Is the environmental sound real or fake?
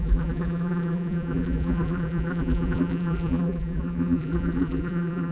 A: fake